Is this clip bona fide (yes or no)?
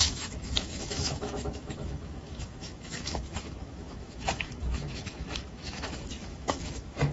no